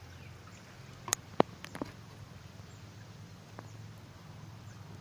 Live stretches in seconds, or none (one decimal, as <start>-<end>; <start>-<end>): 0.0-5.0